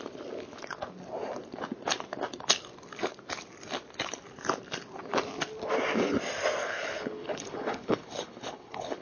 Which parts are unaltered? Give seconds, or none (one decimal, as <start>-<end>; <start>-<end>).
0.0-6.6